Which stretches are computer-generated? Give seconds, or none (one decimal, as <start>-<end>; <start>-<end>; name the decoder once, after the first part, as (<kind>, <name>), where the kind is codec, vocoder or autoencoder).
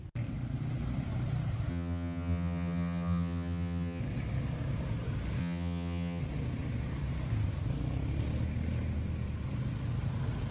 1.7-4.0 (vocoder, HiFi-GAN); 5.4-6.2